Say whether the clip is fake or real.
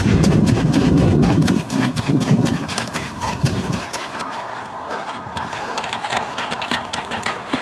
fake